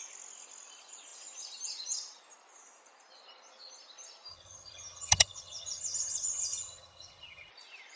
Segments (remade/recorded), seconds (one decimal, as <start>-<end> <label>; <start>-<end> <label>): 0.0-4.3 recorded; 4.3-7.5 remade; 7.5-8.0 recorded